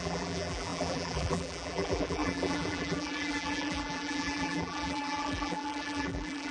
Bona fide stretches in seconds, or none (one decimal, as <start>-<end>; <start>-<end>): none